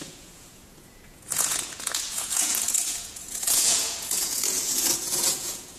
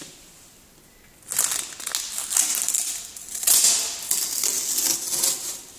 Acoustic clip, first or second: second